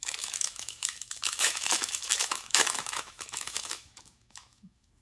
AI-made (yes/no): yes